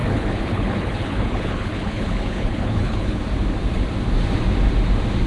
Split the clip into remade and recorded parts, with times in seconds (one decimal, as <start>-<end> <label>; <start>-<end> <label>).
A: 0.0-3.2 remade; 3.2-5.3 recorded